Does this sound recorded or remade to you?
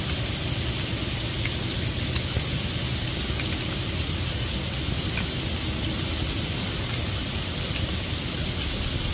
recorded